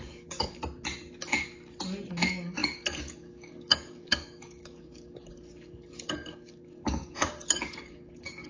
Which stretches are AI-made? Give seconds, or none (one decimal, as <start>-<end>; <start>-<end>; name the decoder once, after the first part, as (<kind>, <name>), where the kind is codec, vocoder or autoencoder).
0.0-0.6 (codec, DAC); 2.1-8.5